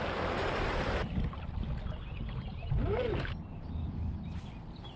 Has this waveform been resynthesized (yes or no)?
no